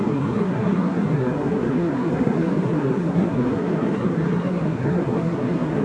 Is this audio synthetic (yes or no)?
yes